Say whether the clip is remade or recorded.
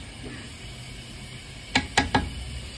recorded